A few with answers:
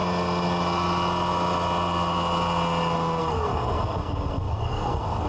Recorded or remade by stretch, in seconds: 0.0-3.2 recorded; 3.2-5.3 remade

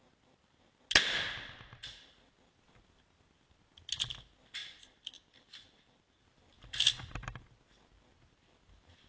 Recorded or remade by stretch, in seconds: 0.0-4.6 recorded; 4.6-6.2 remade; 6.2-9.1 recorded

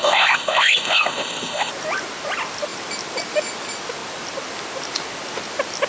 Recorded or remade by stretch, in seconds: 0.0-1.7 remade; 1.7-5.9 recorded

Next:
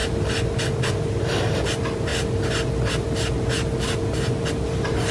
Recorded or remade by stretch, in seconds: 0.0-5.1 recorded

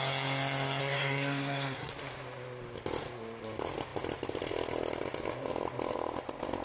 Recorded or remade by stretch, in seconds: 0.0-0.8 recorded; 0.8-1.9 remade; 1.9-6.6 recorded

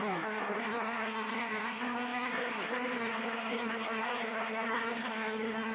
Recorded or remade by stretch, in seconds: 0.0-5.7 remade